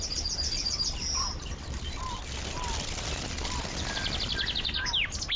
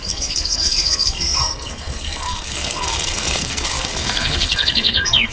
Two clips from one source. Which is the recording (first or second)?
first